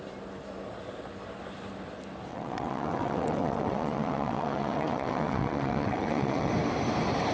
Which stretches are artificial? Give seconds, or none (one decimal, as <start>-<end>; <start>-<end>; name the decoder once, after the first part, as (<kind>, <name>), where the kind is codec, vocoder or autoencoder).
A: 2.3-6.5 (vocoder, WaveNeXt)